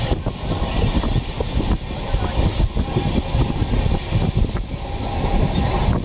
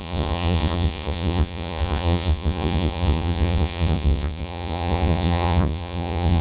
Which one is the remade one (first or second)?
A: second